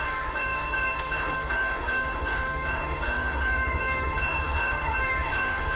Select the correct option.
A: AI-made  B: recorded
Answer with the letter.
A